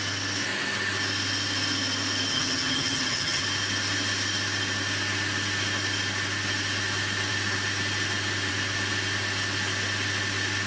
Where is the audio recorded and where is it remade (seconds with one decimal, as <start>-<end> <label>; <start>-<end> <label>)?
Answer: 0.0-2.3 recorded; 2.3-3.4 remade; 3.4-10.7 recorded